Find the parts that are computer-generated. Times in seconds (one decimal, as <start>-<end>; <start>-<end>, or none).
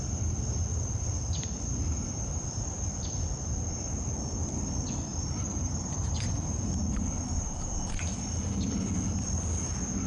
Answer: 5.1-6.9